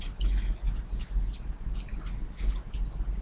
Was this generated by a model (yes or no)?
no